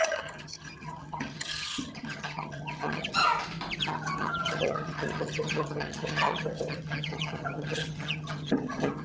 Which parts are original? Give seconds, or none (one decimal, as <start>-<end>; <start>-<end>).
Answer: 3.2-3.8